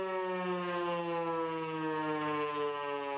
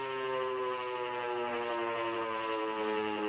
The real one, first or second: first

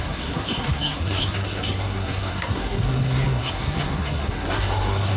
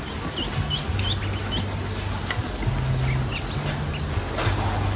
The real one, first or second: second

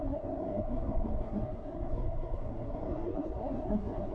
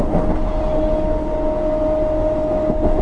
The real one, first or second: second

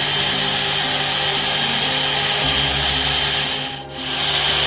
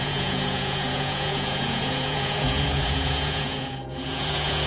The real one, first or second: first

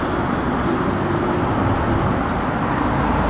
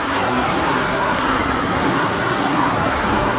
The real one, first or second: first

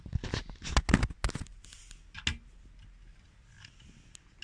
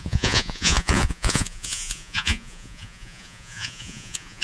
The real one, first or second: first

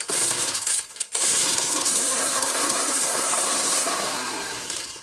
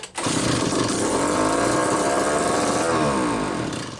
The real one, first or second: second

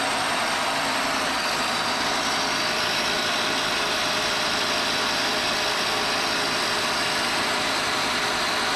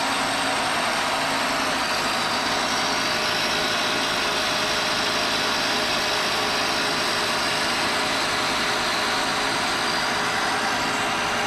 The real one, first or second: second